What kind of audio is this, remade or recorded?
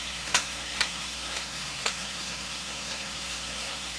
remade